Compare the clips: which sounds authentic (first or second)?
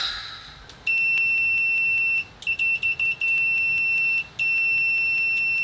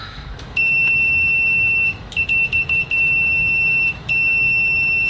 first